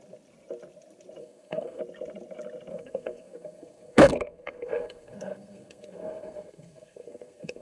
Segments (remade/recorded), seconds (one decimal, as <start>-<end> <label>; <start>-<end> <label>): 0.0-1.2 recorded; 1.2-1.8 remade; 1.8-2.7 recorded; 2.7-7.6 remade